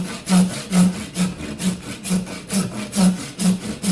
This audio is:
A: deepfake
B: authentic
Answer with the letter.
B